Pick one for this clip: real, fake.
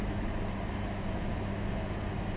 real